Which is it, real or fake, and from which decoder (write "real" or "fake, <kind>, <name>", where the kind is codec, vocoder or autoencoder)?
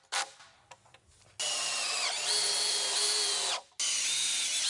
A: real